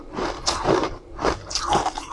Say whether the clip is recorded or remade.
remade